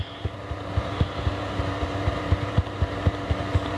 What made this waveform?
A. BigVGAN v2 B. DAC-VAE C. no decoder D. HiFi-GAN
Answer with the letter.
A